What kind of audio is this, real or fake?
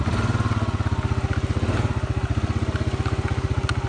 real